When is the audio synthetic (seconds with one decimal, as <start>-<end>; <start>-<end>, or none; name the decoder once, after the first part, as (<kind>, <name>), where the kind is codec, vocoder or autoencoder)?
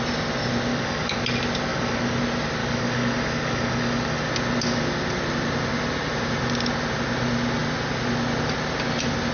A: 0.7-1.2 (codec, DAC); 1.7-2.2; 2.6-4.3